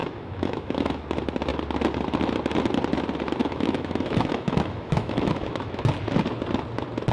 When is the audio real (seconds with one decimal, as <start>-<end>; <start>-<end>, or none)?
1.0-3.4; 5.9-7.1